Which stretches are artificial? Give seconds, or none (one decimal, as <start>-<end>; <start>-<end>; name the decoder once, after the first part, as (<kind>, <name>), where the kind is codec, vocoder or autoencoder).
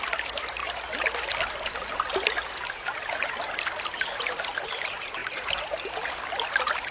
none